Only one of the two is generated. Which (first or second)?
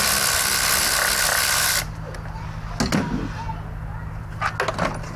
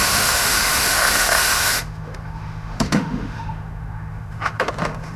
second